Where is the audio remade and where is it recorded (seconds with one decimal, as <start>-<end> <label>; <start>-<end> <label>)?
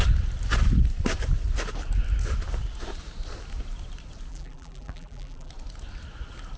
0.0-4.3 recorded; 4.3-5.5 remade; 5.5-6.6 recorded